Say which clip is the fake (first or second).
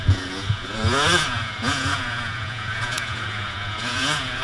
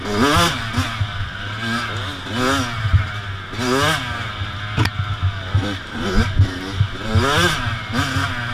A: first